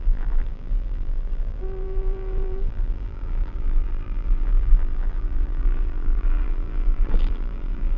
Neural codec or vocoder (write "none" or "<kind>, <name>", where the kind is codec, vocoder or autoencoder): vocoder, BigVGAN v2